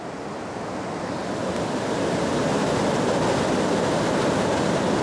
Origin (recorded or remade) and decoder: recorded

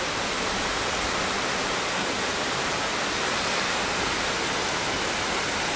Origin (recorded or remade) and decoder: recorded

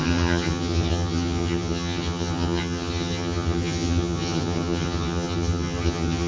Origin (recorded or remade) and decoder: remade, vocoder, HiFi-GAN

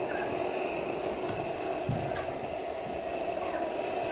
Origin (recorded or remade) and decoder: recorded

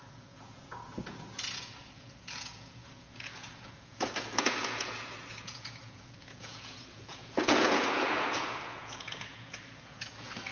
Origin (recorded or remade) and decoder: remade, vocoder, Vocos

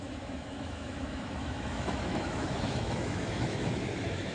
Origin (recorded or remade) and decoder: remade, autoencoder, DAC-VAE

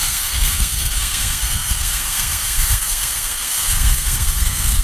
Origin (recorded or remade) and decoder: remade, codec, SNAC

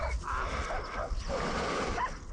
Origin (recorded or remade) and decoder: recorded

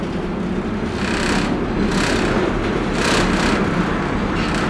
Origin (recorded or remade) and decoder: recorded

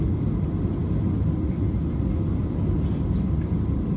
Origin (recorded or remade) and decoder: recorded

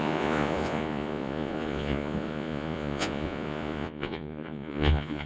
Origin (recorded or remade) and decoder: remade, vocoder, Vocos